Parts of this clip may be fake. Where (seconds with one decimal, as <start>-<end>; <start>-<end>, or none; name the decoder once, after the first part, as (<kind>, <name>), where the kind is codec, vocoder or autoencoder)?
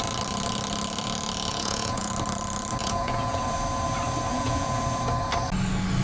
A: 1.5-2.1 (vocoder, Vocos); 2.8-3.4; 4.3-4.8